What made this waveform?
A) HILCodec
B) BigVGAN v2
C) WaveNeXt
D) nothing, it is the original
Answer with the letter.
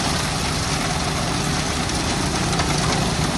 D